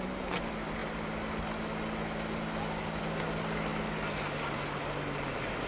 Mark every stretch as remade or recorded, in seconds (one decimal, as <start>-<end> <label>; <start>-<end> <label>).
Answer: 0.0-5.7 recorded